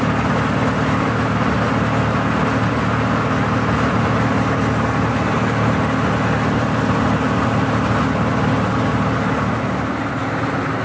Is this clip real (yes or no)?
yes